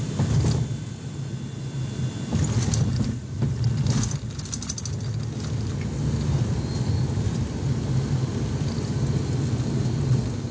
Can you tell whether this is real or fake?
real